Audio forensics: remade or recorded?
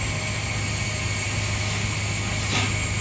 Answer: recorded